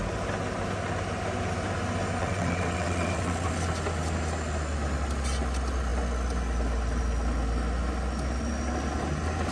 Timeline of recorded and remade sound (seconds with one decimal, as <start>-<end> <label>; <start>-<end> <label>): 0.0-2.2 recorded; 2.2-3.5 remade; 3.5-9.5 recorded